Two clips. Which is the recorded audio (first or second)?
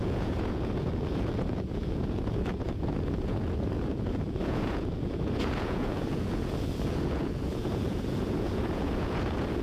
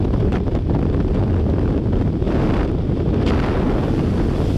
second